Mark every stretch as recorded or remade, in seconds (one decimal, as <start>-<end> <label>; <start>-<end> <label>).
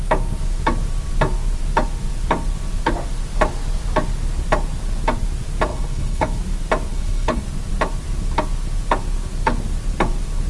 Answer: 0.0-5.7 recorded; 5.7-6.4 remade; 6.4-6.9 recorded; 6.9-7.4 remade; 7.4-10.5 recorded